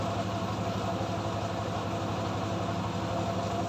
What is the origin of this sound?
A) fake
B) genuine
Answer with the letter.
B